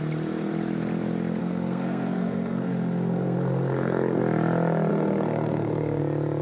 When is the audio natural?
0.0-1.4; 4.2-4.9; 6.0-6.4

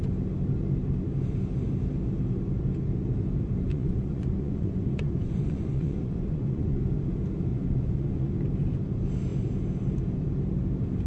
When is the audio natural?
0.0-3.7; 6.8-7.5; 8.3-11.1